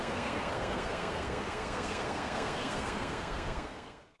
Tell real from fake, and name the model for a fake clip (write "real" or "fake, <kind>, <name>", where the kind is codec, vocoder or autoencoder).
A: fake, codec, SNAC